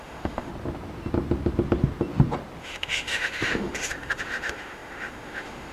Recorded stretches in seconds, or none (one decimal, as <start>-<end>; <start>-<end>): 0.5-2.6